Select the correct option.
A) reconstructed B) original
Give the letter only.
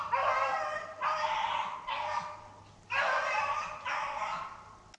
B